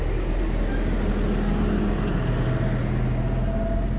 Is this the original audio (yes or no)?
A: yes